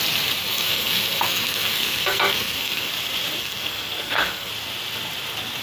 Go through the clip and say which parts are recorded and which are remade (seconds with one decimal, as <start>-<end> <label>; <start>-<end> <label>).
0.0-0.5 recorded; 0.5-2.9 remade; 2.9-3.4 recorded; 3.4-4.5 remade; 4.5-5.6 recorded